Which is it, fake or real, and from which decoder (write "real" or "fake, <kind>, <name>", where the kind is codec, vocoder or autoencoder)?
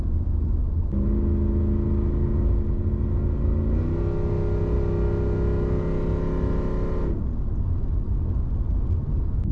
real